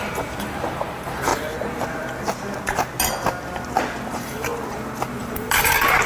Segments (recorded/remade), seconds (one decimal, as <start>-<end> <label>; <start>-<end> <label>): 0.0-1.3 remade; 1.3-4.1 recorded; 4.1-4.5 remade; 4.5-5.2 recorded; 5.2-6.1 remade